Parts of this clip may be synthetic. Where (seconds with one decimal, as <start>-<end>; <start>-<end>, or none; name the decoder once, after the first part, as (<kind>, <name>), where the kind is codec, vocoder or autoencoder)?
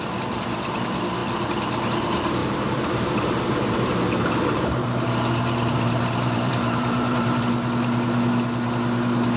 2.4-7.4 (vocoder, BigVGAN v2)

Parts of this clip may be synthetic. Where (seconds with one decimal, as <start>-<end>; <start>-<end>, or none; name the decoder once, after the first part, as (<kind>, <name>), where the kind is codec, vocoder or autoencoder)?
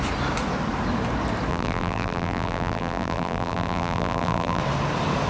1.5-4.6 (vocoder, BigVGAN v2)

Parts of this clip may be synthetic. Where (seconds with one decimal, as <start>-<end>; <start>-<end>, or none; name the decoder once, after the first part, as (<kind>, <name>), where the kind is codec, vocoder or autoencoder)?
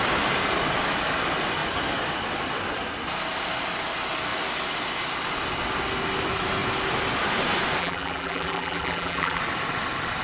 7.8-9.4 (vocoder, BigVGAN v2)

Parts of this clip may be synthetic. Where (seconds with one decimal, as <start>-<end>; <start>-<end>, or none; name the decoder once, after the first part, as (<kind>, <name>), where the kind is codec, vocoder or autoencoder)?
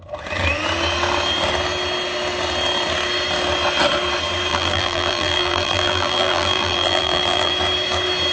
4.5-7.5 (vocoder, BigVGAN v2)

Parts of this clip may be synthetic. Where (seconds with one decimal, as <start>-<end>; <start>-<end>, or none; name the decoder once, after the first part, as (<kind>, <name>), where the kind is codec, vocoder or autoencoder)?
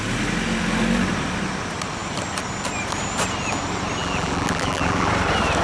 4.0-5.1 (vocoder, BigVGAN v2)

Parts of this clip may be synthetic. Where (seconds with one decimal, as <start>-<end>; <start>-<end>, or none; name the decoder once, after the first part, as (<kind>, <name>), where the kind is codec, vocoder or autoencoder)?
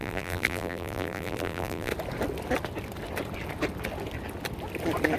0.0-1.9 (vocoder, BigVGAN v2)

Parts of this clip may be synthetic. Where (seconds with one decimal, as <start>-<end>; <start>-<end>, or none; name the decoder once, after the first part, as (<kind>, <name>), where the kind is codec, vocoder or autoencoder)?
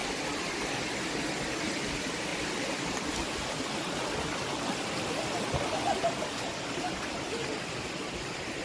none